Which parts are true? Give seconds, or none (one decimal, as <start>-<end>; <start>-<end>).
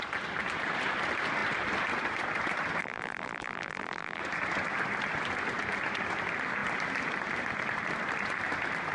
0.0-2.8; 4.2-8.9